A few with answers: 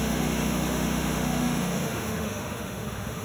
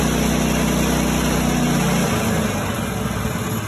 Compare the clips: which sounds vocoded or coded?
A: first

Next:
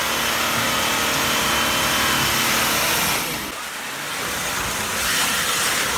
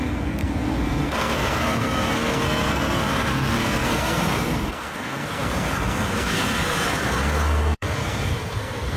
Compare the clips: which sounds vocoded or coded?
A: second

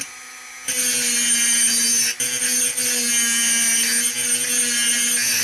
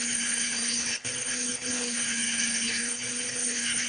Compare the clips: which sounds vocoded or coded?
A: second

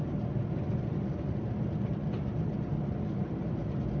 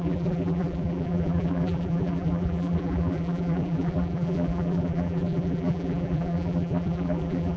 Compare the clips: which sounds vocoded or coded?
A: second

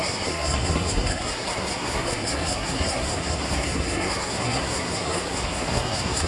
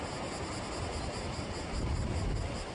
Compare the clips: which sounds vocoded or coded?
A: first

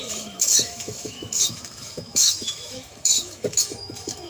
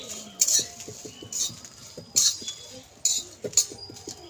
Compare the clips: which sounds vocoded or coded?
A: first